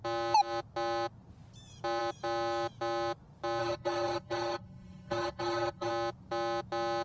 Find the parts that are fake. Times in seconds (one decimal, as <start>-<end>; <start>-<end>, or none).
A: 3.6-5.9

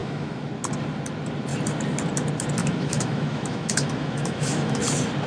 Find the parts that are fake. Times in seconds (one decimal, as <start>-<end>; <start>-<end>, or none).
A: 0.0-0.5; 2.6-4.8

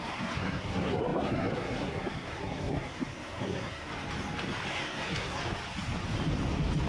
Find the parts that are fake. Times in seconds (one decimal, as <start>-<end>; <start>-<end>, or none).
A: 0.0-3.9; 4.7-5.4

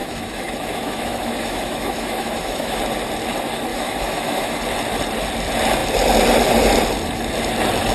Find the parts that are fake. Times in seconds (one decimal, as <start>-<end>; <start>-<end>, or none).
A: 0.0-2.8; 3.7-4.6

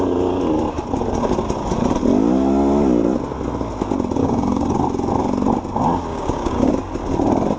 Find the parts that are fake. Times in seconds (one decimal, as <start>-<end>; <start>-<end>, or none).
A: 4.2-4.8; 6.1-6.7

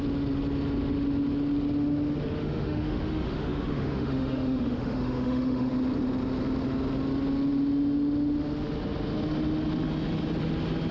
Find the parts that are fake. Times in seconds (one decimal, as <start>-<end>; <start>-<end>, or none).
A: 2.4-5.7

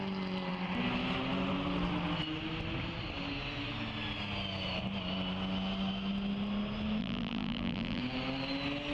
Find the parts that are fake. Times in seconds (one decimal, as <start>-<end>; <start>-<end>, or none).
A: 7.0-8.0

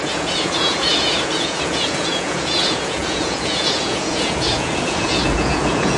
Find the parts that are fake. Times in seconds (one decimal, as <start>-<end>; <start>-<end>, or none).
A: 0.0-6.0